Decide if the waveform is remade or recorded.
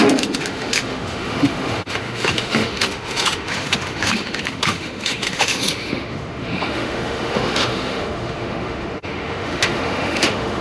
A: remade